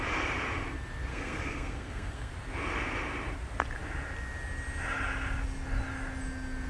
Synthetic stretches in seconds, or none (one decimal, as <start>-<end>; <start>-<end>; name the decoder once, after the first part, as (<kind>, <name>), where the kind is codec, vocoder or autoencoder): 1.1-2.3 (codec, SNAC)